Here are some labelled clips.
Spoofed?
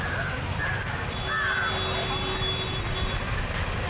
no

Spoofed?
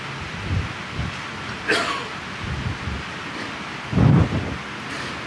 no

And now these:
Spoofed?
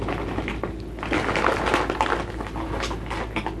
no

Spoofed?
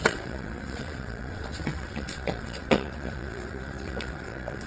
yes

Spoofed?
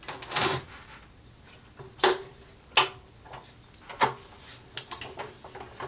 no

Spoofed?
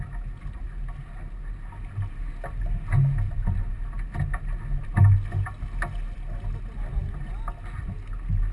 no